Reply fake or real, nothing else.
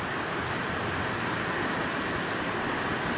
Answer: fake